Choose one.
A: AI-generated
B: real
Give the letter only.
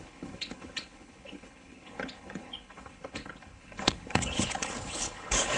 A